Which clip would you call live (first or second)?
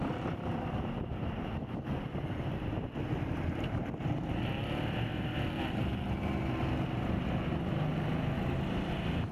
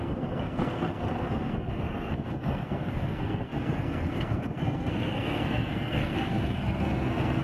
first